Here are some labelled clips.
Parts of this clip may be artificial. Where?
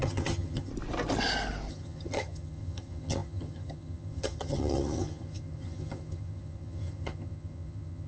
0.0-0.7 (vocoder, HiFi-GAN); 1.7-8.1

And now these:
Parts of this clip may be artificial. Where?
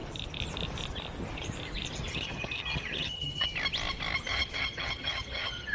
2.1-3.5 (vocoder, HiFi-GAN); 4.3-5.7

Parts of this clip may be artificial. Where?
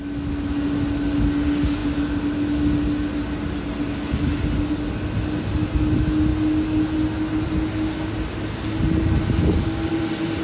none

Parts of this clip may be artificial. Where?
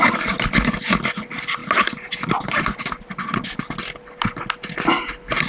none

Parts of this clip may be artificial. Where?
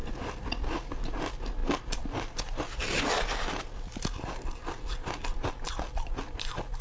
none